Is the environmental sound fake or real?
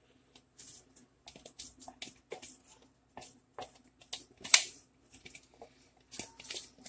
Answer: real